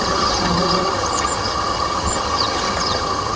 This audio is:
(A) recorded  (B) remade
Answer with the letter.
B